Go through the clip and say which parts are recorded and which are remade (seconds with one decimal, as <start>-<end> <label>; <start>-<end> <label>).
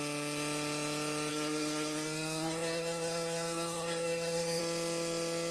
0.0-1.3 recorded; 1.3-4.6 remade; 4.6-5.5 recorded